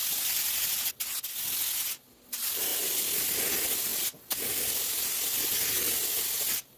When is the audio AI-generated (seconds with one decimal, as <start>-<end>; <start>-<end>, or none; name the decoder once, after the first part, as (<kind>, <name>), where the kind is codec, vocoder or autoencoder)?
none